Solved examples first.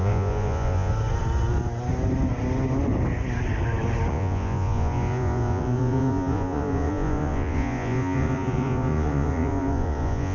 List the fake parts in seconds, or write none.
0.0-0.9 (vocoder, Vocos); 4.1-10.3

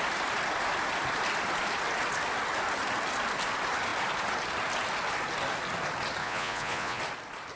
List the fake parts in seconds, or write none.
6.2-7.0 (vocoder, Vocos)